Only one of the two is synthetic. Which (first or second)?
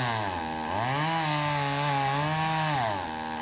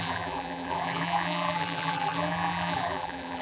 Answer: second